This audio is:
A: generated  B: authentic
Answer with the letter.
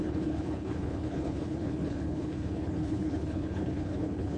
A